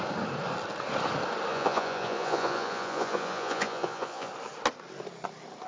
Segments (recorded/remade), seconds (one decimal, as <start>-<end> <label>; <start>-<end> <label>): 0.0-1.5 recorded; 1.5-4.3 remade; 4.3-5.7 recorded